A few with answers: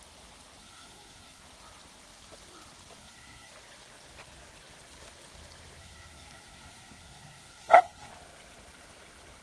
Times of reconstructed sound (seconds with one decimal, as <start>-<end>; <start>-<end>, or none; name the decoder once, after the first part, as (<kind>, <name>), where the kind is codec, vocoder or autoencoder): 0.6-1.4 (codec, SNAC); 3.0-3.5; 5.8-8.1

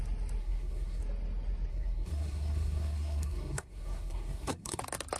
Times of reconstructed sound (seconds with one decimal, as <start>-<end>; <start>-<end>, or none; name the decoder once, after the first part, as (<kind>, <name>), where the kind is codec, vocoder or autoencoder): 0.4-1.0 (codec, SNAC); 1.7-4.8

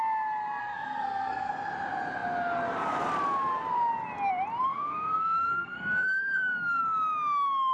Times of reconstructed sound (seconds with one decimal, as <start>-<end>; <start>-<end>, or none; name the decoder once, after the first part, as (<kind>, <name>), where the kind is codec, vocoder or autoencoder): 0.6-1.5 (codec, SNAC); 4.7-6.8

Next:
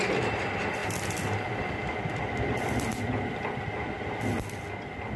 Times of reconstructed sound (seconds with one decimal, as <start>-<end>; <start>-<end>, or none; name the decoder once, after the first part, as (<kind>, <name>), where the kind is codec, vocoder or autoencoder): none

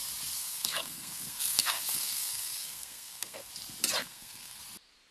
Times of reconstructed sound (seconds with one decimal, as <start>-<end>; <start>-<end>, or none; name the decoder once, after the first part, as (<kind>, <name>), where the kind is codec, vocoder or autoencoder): 0.4-3.5 (codec, SNAC); 4.0-4.6